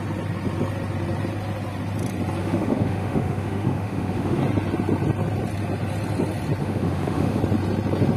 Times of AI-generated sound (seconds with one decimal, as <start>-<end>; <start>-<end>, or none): 2.4-4.4; 6.6-7.4